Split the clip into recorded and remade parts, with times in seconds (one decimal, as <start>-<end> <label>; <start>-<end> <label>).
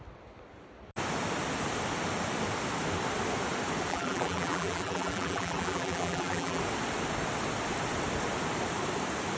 0.0-3.9 recorded; 3.9-6.6 remade; 6.6-9.4 recorded